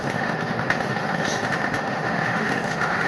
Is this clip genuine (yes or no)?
no